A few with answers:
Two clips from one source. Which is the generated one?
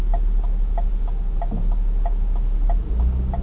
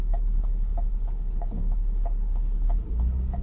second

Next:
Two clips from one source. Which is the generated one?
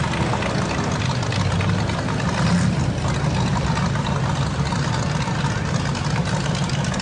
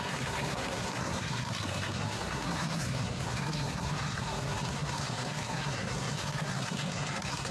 second